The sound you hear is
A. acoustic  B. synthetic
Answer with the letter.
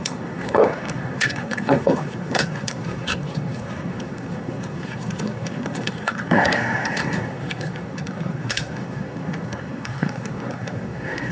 B